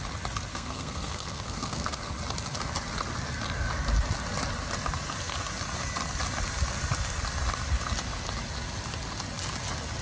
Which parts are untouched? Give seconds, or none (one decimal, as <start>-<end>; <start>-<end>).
0.0-0.5; 2.1-10.0